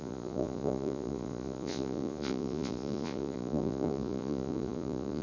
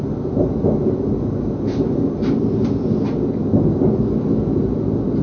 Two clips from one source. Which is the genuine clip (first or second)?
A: second